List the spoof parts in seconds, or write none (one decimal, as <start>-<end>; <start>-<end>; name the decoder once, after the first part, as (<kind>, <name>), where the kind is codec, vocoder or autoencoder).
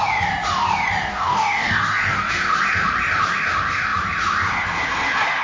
1.1-2.3 (codec, DAC)